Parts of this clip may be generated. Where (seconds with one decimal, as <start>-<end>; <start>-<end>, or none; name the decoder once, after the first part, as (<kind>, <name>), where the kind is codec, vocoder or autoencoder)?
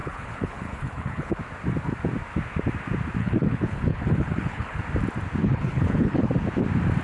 0.0-1.4 (codec, HILCodec); 3.2-4.8; 5.4-6.3